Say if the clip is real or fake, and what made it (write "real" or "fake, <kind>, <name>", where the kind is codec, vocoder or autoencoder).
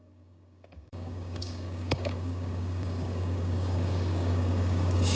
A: fake, codec, DAC